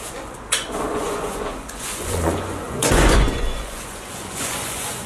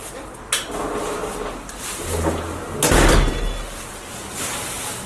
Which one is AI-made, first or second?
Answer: first